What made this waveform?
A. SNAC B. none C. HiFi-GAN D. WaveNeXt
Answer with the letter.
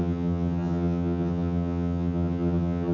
C